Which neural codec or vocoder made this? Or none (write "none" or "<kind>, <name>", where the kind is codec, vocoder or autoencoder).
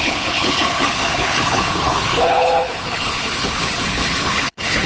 codec, HILCodec